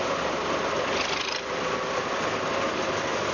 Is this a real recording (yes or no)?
no